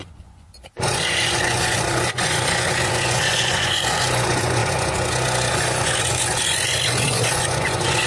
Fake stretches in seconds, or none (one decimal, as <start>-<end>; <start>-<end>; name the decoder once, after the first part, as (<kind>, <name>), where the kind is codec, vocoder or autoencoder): 0.0-8.1 (vocoder, Vocos)